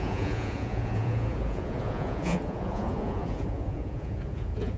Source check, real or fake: fake